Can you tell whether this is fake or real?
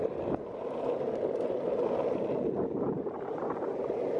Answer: real